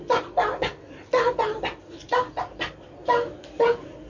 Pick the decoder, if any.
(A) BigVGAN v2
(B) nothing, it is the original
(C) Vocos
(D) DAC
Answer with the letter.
B